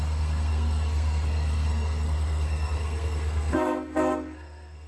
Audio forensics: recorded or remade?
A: remade